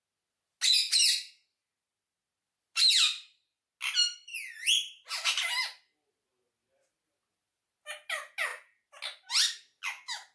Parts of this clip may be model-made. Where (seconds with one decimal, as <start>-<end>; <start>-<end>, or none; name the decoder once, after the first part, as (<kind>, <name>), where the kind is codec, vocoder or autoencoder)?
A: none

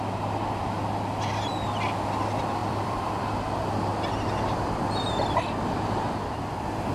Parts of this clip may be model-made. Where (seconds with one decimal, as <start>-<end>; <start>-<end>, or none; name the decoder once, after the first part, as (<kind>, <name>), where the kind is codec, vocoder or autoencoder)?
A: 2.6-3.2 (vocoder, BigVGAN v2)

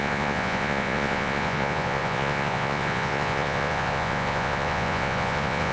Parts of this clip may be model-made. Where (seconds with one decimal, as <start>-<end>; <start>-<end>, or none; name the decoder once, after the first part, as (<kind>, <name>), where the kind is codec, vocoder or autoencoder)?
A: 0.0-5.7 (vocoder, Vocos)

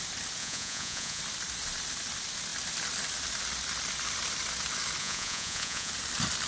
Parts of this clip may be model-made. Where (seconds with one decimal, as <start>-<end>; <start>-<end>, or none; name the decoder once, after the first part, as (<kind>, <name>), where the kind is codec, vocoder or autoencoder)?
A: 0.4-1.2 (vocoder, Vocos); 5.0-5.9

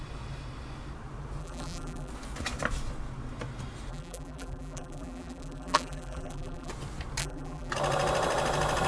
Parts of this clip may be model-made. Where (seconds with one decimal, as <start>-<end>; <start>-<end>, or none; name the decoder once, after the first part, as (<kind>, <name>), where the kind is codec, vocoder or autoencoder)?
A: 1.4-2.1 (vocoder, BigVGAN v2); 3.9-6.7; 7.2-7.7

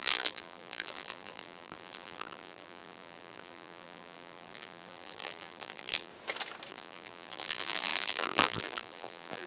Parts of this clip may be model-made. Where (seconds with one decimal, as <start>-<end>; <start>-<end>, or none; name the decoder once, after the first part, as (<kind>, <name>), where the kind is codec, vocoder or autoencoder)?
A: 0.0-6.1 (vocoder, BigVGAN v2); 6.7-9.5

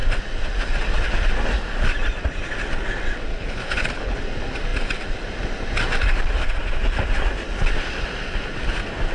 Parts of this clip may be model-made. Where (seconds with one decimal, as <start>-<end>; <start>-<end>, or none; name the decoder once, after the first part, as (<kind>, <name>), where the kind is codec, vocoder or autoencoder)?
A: 3.3-4.2 (codec, HILCodec)

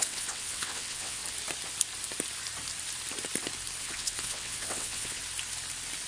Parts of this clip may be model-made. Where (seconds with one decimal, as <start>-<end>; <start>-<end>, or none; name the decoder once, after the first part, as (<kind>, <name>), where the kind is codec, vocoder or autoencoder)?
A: 0.0-1.2 (vocoder, WaveNeXt); 3.8-5.2